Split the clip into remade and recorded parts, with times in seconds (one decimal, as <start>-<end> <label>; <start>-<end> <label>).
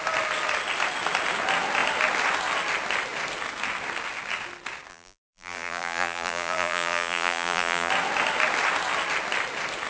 0.0-4.9 recorded; 4.9-7.9 remade; 7.9-9.9 recorded